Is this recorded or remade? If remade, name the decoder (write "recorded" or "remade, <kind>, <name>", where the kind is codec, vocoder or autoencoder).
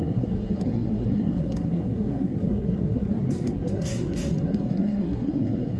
remade, codec, SNAC